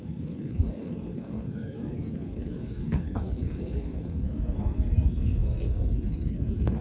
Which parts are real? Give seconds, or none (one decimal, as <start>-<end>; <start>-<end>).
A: none